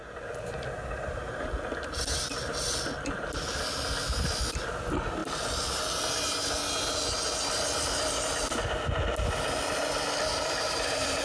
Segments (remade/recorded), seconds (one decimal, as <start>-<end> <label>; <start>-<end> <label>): 0.0-10.3 recorded; 10.3-11.2 remade